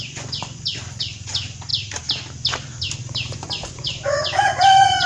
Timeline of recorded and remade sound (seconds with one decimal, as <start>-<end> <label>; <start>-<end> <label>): 0.0-1.7 remade; 1.7-3.0 recorded; 3.0-5.1 remade